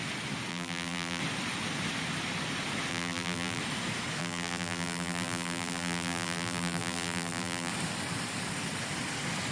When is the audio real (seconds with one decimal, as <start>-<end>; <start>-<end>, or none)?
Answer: 0.0-0.5; 1.2-2.9; 3.6-4.2; 7.7-9.5